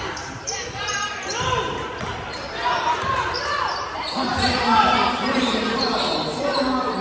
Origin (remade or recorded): remade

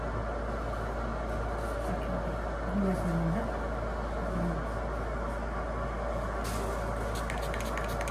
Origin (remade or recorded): recorded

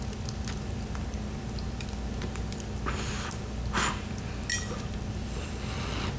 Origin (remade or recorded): recorded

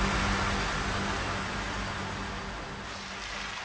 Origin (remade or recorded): recorded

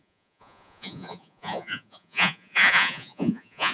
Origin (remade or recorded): remade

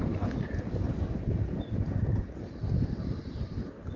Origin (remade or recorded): recorded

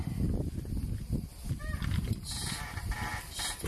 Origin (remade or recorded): recorded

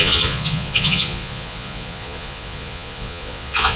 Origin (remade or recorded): remade